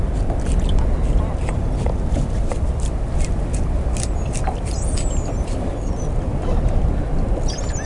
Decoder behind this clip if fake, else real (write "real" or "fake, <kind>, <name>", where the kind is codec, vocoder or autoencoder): real